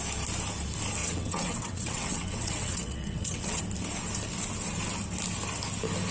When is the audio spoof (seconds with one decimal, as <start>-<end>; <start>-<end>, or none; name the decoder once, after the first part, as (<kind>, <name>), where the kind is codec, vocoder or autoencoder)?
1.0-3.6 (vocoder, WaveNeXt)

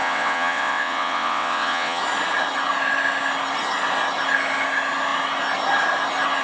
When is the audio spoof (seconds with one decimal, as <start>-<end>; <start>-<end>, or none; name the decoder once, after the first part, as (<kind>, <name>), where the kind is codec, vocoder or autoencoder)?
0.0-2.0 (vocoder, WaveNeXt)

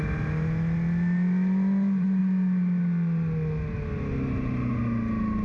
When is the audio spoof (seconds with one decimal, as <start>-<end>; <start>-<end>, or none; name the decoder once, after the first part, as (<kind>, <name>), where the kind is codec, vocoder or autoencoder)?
none

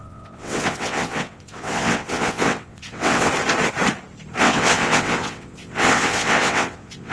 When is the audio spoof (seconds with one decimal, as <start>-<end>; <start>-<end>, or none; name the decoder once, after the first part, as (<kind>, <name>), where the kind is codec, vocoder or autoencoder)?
0.0-3.3 (vocoder, WaveNeXt); 4.4-7.1